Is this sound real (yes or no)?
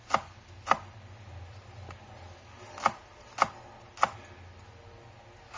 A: yes